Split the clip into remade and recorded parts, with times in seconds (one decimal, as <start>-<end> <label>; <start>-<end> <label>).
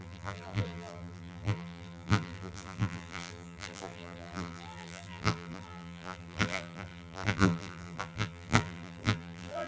0.0-9.7 remade